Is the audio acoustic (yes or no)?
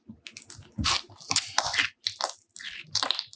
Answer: yes